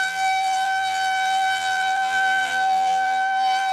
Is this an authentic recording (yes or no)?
no